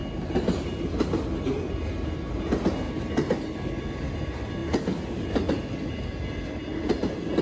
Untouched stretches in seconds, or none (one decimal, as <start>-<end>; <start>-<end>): 0.0-7.4